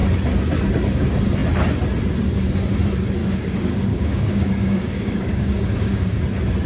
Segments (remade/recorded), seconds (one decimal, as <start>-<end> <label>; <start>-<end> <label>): 0.0-3.2 recorded; 3.2-6.2 remade; 6.2-6.7 recorded